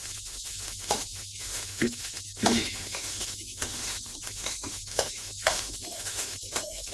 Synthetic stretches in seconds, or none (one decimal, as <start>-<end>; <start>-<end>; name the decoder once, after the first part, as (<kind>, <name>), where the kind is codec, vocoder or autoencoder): 0.0-6.9 (autoencoder, DAC-VAE)